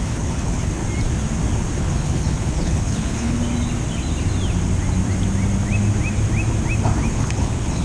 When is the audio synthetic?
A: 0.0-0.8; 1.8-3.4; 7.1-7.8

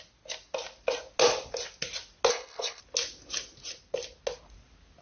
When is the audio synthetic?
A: 2.3-2.8